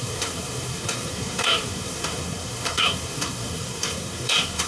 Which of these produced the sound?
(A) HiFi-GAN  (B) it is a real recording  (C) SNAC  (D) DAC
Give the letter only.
C